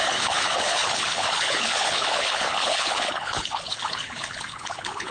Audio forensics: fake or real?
fake